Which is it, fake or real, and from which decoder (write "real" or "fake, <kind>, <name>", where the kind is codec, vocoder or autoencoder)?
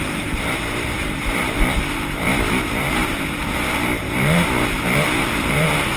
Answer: fake, vocoder, BigVGAN v2